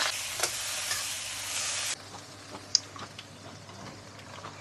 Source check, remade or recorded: recorded